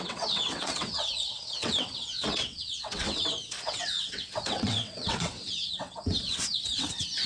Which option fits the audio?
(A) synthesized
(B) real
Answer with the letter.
A